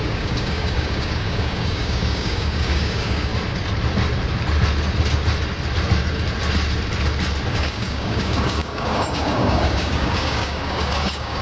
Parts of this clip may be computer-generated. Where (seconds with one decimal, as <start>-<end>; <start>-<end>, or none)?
0.0-3.3; 7.5-11.4